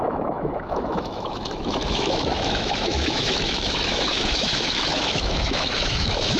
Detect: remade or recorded remade